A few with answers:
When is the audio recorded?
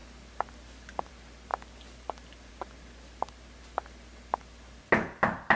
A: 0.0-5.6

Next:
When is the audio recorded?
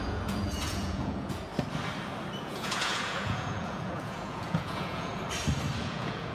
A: 1.5-2.4; 5.1-5.8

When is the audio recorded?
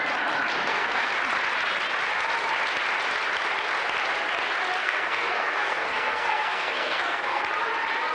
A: 0.0-0.6; 1.1-4.8; 7.4-8.1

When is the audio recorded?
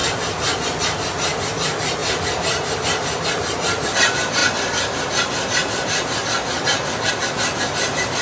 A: 0.0-8.2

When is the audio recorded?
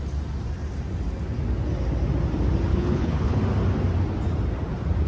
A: 0.0-2.7; 3.4-5.1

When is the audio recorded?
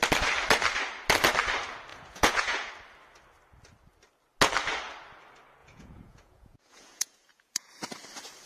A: 0.0-1.9; 2.7-5.6; 7.7-8.5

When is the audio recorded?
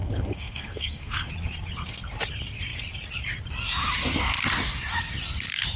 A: 1.3-5.8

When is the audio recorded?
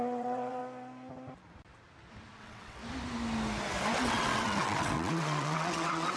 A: 0.6-2.4; 2.8-4.0